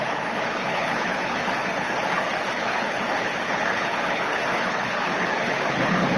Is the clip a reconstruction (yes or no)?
yes